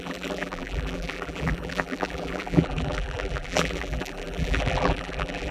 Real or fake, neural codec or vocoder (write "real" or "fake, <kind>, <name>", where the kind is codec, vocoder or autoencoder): fake, vocoder, BigVGAN v2